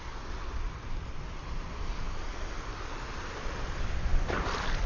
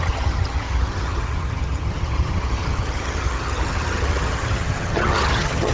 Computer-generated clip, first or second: second